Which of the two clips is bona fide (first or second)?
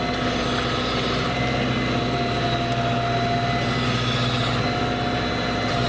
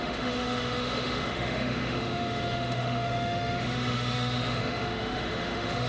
first